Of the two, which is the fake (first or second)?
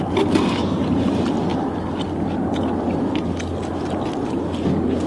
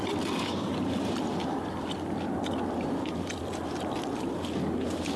second